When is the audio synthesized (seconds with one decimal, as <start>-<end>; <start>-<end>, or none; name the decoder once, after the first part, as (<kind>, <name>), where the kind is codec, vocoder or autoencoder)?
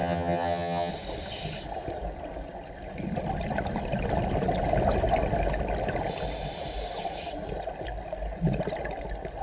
0.0-0.9 (vocoder, HiFi-GAN)